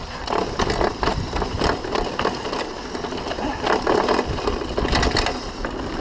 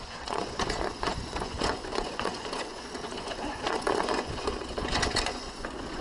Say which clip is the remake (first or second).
second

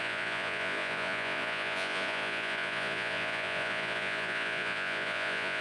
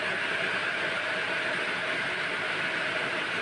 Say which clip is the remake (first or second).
first